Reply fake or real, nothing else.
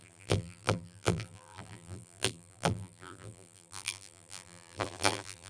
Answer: fake